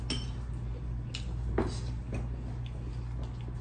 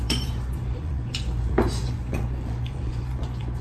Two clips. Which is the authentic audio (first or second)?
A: first